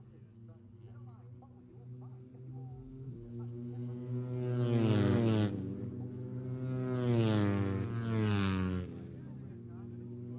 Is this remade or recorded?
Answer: recorded